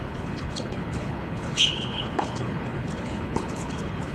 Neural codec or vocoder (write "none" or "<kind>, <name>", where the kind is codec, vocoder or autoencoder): codec, HILCodec